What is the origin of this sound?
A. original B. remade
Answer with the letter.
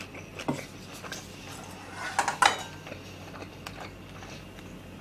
A